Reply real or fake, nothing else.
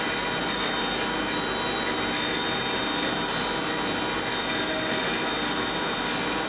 real